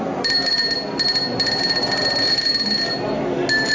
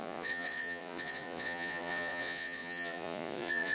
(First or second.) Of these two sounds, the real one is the first